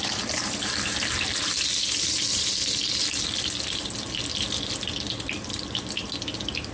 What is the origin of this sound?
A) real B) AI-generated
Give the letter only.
A